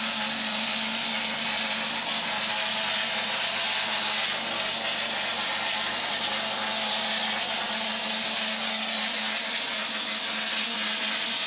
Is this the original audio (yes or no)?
yes